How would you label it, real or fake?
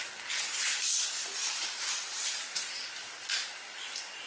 real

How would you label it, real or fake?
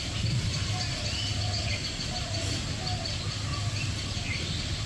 real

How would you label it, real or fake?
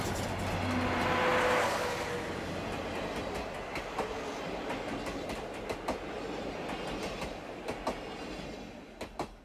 real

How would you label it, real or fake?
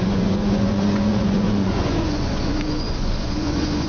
fake